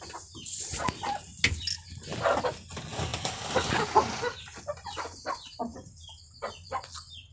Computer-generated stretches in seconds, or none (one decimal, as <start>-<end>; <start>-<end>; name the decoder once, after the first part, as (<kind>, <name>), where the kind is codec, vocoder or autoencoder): none